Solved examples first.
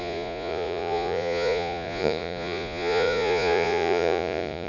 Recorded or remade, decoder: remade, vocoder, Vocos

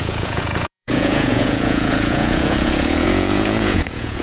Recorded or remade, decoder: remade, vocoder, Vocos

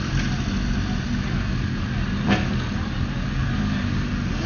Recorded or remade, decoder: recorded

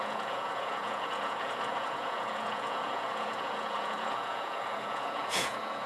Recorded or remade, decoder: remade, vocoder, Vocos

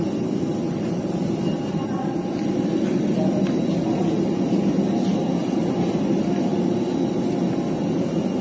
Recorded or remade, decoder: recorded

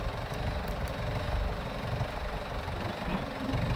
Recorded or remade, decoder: recorded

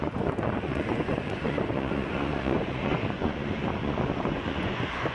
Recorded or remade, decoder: remade, vocoder, Vocos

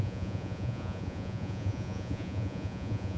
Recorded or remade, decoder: remade, vocoder, Vocos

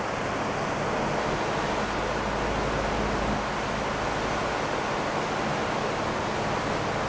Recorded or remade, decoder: recorded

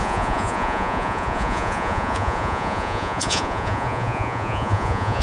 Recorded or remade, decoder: remade, vocoder, Vocos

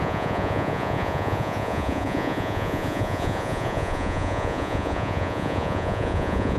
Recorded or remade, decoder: remade, vocoder, Vocos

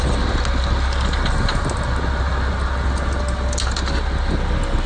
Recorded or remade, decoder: recorded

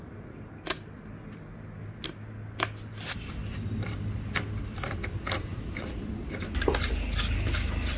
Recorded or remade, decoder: recorded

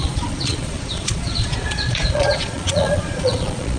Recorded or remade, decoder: remade, vocoder, Vocos